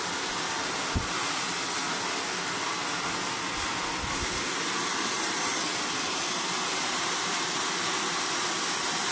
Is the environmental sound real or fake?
real